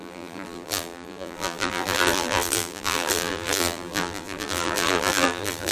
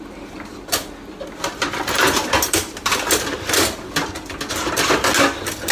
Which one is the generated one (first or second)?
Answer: first